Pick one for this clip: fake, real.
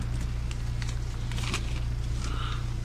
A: real